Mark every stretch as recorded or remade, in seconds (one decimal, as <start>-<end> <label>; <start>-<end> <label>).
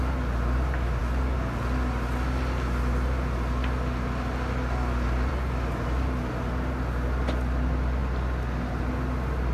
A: 0.0-9.5 recorded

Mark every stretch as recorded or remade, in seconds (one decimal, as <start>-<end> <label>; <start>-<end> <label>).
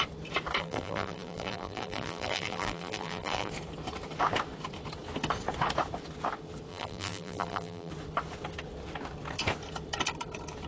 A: 0.0-0.6 recorded; 0.6-3.5 remade; 3.5-6.7 recorded; 6.7-7.9 remade; 7.9-10.7 recorded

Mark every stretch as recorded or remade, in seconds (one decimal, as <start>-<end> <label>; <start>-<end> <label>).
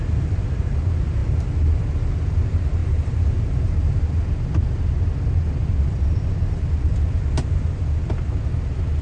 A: 0.0-2.8 recorded; 2.8-4.0 remade; 4.0-9.0 recorded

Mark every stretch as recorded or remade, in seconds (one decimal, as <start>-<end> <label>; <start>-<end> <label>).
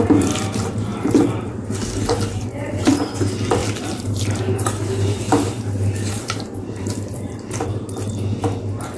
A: 0.0-2.4 recorded; 2.4-3.0 remade; 3.0-3.6 recorded; 3.6-7.8 remade; 7.8-9.0 recorded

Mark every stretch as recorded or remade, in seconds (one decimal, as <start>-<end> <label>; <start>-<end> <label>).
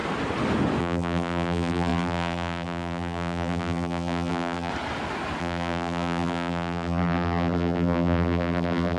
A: 0.0-0.8 recorded; 0.8-4.7 remade; 4.7-5.4 recorded; 5.4-9.0 remade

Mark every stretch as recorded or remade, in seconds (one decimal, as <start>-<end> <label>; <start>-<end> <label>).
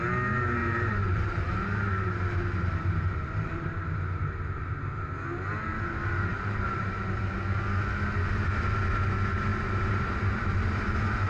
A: 0.0-0.6 recorded; 0.6-4.8 remade; 4.8-6.3 recorded; 6.3-7.2 remade; 7.2-9.5 recorded; 9.5-11.3 remade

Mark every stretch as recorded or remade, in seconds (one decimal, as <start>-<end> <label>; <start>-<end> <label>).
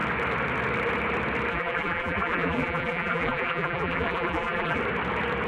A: 0.0-1.5 recorded; 1.5-4.8 remade; 4.8-5.5 recorded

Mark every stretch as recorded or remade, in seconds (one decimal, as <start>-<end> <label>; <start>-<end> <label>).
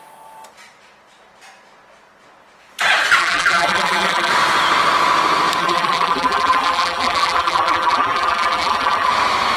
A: 0.0-3.2 recorded; 3.2-4.3 remade; 4.3-5.6 recorded; 5.6-9.1 remade; 9.1-9.6 recorded